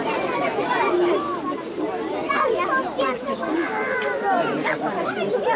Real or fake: fake